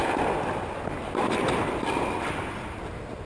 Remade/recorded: recorded